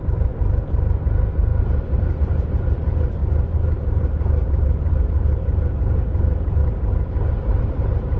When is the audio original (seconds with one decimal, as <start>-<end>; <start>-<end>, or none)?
6.6-7.5